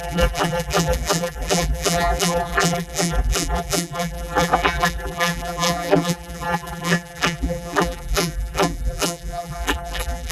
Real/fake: fake